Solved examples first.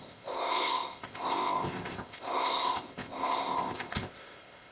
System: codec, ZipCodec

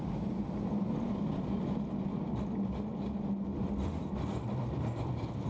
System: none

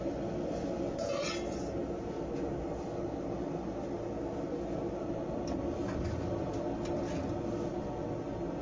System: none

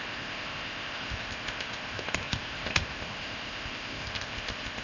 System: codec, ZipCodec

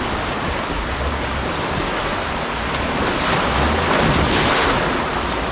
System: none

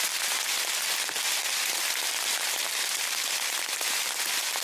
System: none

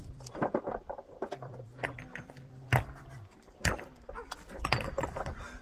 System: vocoder, BigVGAN v2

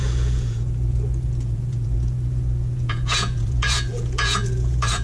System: vocoder, Vocos